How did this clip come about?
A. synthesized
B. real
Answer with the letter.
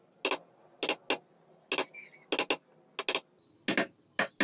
B